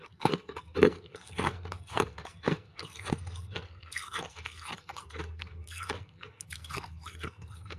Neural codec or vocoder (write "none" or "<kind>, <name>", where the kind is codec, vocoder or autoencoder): codec, SNAC